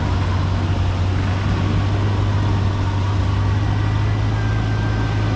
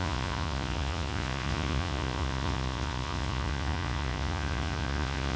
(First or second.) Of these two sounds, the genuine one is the first